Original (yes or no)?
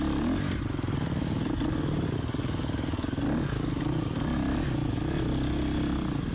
yes